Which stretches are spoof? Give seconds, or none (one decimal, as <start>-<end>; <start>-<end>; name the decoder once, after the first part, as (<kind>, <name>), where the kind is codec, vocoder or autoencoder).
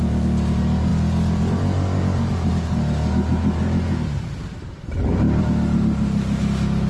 0.9-2.5 (vocoder, BigVGAN v2); 3.3-5.4